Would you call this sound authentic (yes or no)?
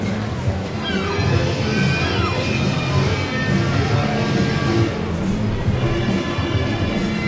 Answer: yes